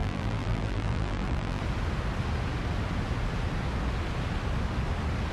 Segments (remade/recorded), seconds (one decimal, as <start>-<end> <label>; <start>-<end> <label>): 0.0-1.6 remade; 1.6-5.3 recorded